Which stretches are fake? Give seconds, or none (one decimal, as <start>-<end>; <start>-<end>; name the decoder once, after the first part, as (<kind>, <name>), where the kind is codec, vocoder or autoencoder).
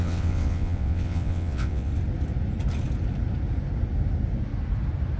0.0-1.9 (vocoder, WaveNeXt)